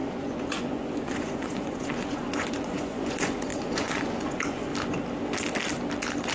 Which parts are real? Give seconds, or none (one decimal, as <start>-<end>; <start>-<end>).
4.7-6.3